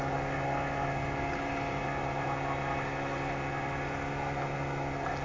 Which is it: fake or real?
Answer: real